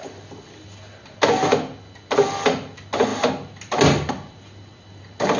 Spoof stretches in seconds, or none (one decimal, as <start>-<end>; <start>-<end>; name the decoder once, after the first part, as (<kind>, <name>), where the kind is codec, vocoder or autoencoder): none